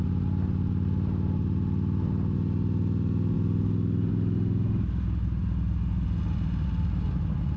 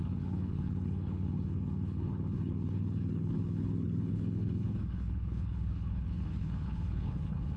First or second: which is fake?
second